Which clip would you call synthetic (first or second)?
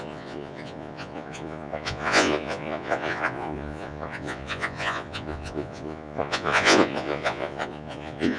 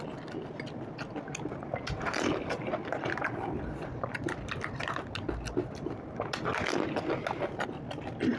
first